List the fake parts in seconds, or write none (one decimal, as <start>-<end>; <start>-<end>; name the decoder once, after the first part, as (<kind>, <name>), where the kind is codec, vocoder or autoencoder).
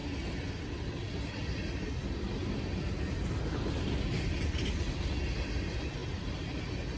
6.0-6.6 (vocoder, BigVGAN v2)